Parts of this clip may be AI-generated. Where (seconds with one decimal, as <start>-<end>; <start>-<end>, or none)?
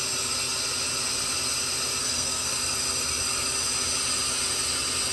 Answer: 2.0-2.5